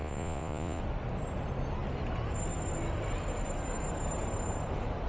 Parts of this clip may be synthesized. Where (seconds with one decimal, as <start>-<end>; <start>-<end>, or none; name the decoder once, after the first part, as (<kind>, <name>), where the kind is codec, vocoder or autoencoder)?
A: 0.0-0.8 (vocoder, Vocos)